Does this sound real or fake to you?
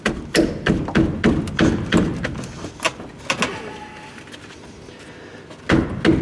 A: real